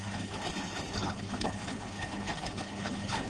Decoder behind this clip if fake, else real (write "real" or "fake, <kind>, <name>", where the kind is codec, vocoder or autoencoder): fake, codec, HILCodec